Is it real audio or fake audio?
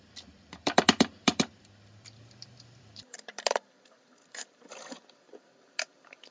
fake